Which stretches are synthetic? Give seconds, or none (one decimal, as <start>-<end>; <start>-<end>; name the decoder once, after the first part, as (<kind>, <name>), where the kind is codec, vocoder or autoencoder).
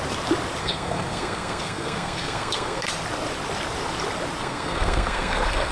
0.6-2.9 (codec, SNAC); 4.4-5.7